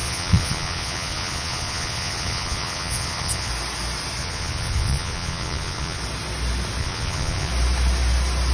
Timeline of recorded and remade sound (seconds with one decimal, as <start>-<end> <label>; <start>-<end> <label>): 0.0-3.5 remade; 3.5-4.2 recorded; 4.2-6.0 remade; 6.0-6.8 recorded; 6.8-7.5 remade; 7.5-8.5 recorded